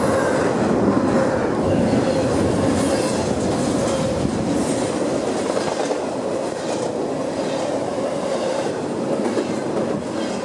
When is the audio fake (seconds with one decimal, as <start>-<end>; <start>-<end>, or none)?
7.9-9.7